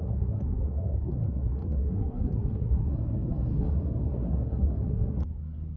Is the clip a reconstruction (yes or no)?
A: yes